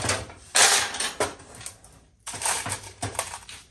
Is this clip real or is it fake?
fake